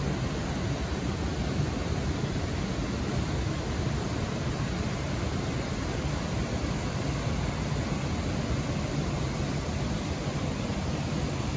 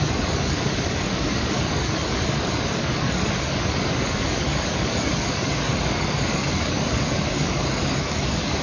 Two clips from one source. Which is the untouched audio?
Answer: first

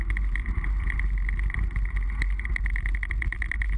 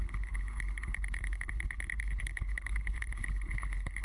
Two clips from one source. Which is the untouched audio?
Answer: first